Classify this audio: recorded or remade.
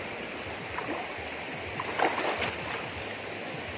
recorded